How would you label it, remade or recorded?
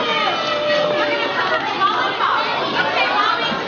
recorded